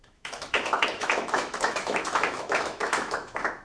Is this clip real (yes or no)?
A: no